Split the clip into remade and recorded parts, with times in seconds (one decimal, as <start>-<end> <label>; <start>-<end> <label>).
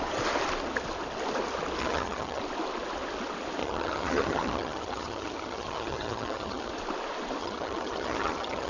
0.0-1.8 recorded; 1.8-2.4 remade; 2.4-3.6 recorded; 3.6-6.7 remade; 6.7-7.4 recorded; 7.4-8.7 remade